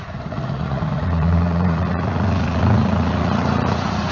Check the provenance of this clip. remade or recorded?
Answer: remade